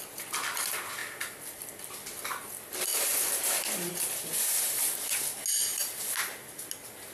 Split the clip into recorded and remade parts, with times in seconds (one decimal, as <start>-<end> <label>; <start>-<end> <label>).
0.0-2.9 recorded; 2.9-3.9 remade; 3.9-7.1 recorded